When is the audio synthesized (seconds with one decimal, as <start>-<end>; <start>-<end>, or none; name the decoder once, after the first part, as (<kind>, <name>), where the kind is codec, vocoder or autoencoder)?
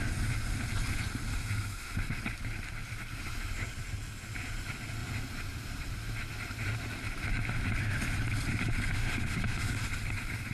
1.3-2.2 (autoencoder, DAC-VAE); 8.9-9.8